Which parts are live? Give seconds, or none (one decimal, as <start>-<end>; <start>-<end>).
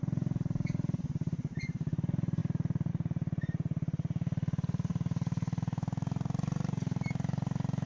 2.4-2.9